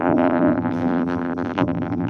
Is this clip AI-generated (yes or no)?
yes